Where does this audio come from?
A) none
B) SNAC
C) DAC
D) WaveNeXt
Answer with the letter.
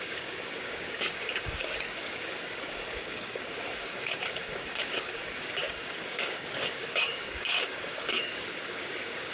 C